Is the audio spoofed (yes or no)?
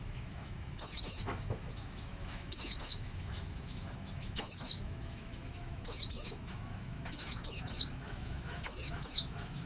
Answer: yes